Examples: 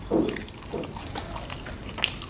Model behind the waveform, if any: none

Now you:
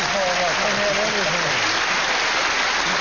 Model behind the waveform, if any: none